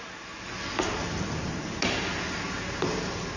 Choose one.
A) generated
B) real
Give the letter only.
B